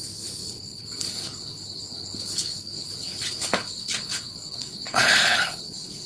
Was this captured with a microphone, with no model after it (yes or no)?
no